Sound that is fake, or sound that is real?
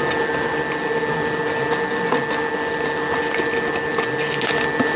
real